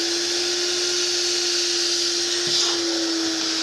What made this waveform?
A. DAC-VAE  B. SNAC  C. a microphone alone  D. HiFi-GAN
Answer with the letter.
C